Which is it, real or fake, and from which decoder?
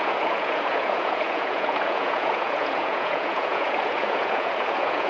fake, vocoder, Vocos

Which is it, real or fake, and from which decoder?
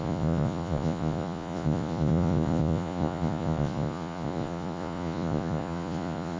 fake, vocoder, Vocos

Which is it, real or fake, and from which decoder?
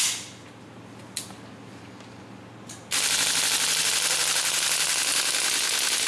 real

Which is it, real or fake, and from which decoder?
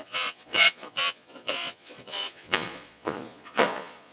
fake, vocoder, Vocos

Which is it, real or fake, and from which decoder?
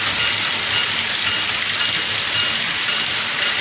real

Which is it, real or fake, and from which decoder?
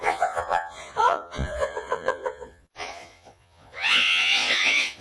fake, vocoder, Vocos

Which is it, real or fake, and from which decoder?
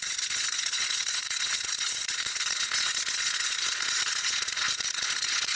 fake, vocoder, Vocos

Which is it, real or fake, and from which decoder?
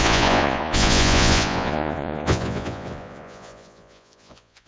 fake, vocoder, Vocos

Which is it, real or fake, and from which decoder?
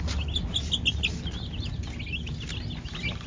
real